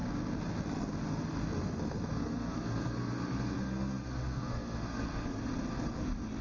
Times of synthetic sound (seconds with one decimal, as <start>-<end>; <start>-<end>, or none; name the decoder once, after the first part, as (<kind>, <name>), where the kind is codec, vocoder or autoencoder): 1.6-5.4 (codec, SNAC)